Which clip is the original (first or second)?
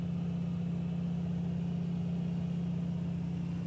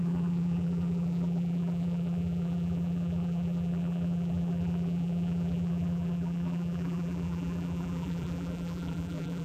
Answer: first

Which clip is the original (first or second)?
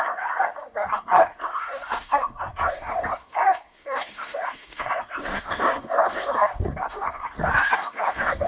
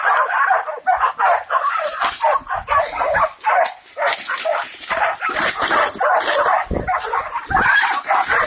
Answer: second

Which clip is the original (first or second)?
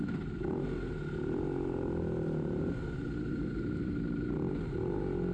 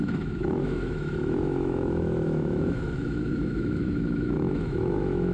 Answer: first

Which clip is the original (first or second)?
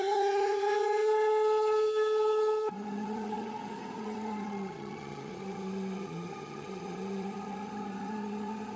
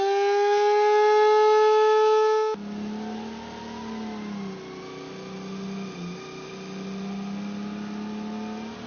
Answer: second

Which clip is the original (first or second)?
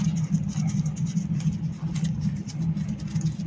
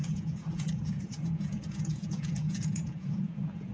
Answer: first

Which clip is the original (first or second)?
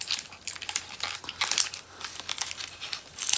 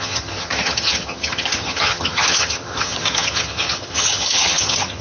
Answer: first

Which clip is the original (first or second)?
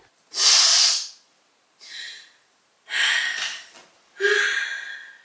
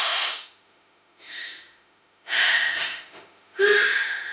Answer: first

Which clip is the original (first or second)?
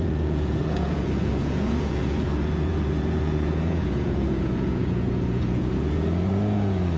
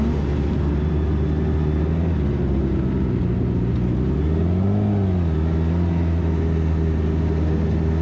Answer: second